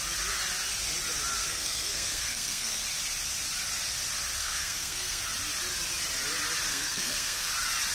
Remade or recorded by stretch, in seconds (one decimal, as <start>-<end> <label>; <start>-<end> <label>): 0.0-1.4 recorded; 1.4-2.8 remade; 2.8-4.4 recorded; 4.4-5.2 remade; 5.2-6.7 recorded; 6.7-7.5 remade; 7.5-7.9 recorded